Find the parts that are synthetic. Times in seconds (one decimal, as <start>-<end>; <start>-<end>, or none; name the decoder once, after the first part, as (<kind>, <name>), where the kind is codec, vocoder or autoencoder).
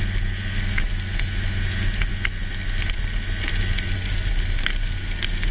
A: none